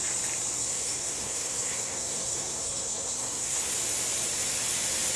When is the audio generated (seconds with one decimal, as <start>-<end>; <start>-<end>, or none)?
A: 0.6-3.7